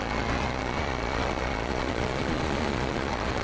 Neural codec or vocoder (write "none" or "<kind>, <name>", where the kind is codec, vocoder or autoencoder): vocoder, Vocos